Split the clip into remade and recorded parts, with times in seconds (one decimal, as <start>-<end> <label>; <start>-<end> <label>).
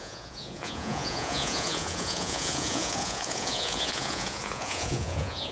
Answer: 0.0-5.5 remade